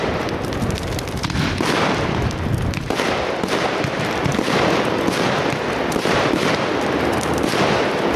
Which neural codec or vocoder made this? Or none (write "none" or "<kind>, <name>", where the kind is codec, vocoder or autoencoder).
none